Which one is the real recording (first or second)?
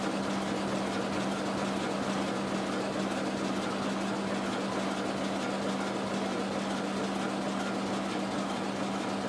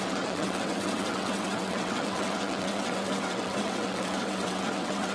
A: first